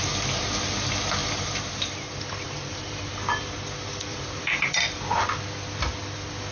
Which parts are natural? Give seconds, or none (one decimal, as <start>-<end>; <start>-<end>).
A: 0.0-1.2; 3.1-4.1; 4.7-6.5